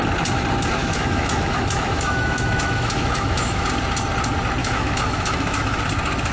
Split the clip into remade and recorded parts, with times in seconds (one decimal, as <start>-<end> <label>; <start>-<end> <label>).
0.0-0.8 recorded; 0.8-3.7 remade; 3.7-4.6 recorded; 4.6-5.8 remade; 5.8-6.3 recorded